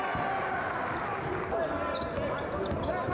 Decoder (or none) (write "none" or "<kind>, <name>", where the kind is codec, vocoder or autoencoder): none